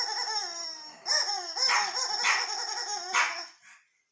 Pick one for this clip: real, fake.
real